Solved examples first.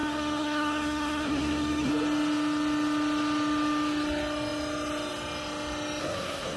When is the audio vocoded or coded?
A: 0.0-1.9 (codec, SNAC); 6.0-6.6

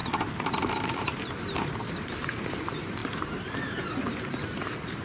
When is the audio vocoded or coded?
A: 2.0-5.0 (vocoder, BigVGAN v2)